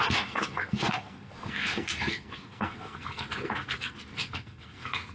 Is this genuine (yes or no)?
no